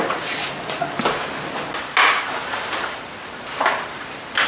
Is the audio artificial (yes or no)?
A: no